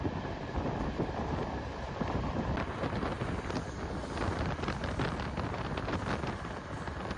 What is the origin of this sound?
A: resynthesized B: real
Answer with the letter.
B